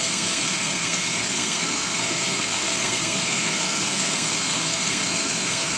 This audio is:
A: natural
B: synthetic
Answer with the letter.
B